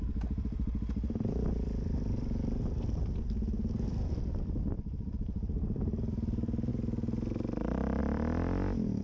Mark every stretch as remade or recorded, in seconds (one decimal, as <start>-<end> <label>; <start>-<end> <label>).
0.0-6.7 remade; 6.7-8.0 recorded; 8.0-9.0 remade